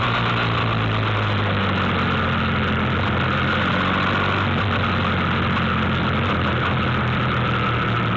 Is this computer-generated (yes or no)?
no